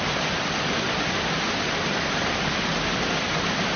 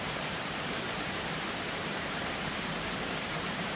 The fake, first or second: second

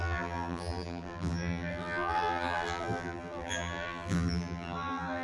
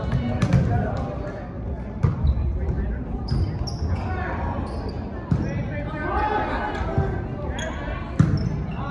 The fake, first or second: first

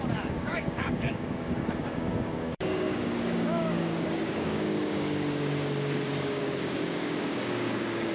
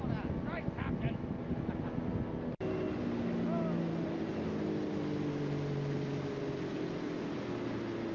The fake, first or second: first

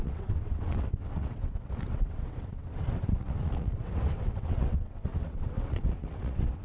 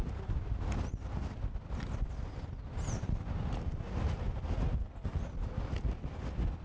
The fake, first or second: first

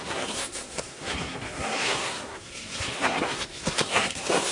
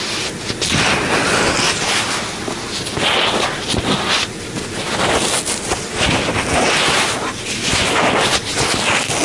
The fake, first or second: first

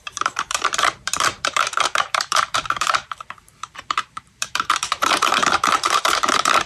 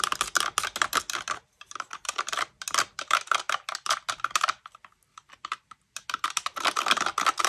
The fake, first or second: first